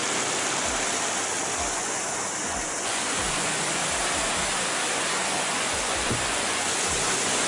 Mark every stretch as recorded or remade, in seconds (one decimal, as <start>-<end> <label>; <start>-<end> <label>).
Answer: 0.0-1.7 recorded; 1.7-3.8 remade; 3.8-4.9 recorded; 4.9-7.5 remade